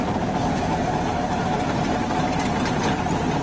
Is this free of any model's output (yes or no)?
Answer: yes